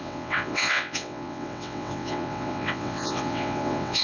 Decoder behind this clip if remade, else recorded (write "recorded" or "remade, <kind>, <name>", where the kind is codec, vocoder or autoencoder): remade, vocoder, WaveNeXt